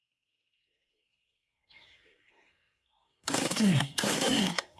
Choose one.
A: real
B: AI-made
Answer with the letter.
B